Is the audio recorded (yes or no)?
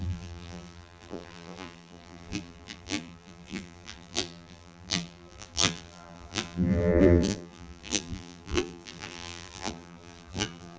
no